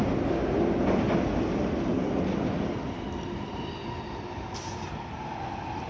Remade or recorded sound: recorded